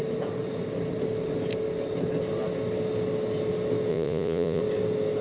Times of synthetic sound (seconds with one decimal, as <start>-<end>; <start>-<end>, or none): 3.9-4.6